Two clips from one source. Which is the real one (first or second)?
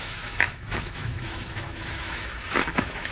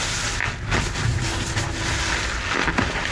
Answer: second